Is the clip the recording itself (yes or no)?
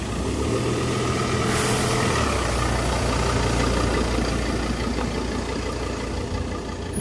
yes